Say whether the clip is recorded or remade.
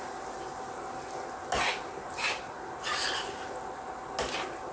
recorded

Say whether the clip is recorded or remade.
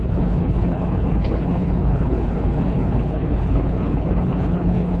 remade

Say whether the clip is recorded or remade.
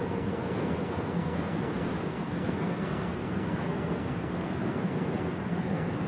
remade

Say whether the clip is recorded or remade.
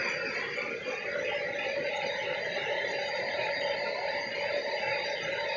recorded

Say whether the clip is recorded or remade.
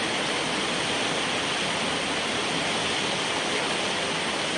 recorded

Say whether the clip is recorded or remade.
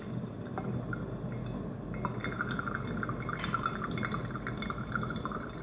recorded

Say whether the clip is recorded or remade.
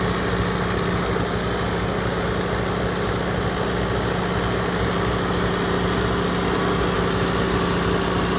recorded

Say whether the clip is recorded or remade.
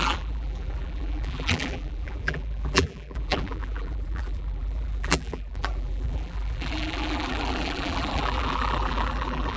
remade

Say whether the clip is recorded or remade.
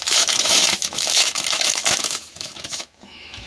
remade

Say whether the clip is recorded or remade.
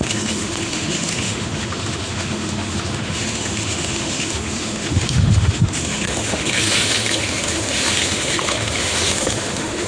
remade